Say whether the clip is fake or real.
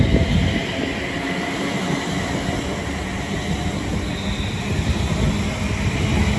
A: real